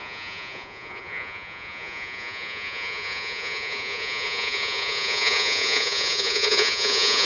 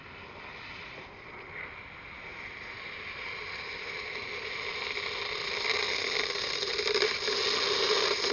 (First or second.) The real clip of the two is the second